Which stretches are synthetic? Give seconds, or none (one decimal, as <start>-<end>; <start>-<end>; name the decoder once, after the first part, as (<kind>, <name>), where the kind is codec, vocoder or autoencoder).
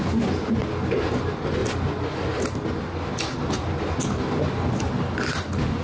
none